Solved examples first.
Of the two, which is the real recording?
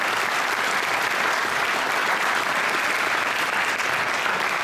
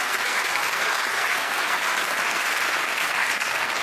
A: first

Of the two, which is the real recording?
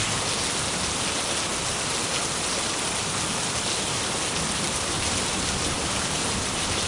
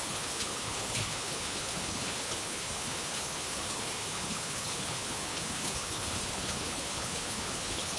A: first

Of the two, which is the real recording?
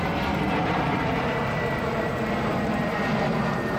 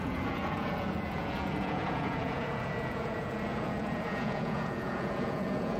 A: first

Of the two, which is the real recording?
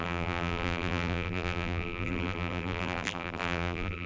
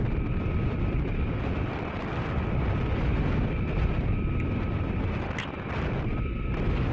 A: second